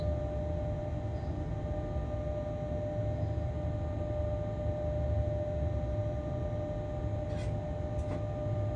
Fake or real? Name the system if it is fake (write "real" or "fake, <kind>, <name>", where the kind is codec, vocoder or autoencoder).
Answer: real